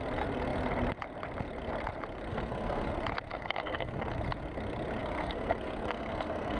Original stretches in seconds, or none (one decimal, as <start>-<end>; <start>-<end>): 0.0-2.3; 2.9-3.3; 4.0-5.0